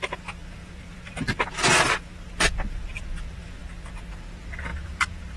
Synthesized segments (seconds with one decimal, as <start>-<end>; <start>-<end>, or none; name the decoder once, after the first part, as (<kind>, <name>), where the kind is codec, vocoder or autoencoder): 0.0-3.6 (vocoder, BigVGAN v2); 4.2-5.4

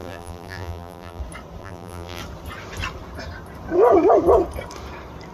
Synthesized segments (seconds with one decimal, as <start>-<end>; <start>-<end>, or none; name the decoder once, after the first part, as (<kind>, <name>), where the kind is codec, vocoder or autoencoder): 0.0-1.2 (vocoder, BigVGAN v2); 1.6-2.2

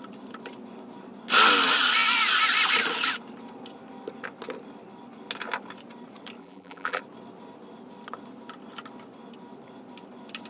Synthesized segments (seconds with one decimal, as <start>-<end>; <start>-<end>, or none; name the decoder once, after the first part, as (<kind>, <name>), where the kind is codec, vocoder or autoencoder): 6.4-7.0 (vocoder, BigVGAN v2)

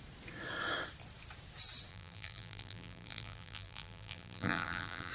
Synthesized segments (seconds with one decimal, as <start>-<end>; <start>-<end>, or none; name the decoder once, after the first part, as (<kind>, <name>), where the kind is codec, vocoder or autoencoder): 1.9-5.1 (vocoder, BigVGAN v2)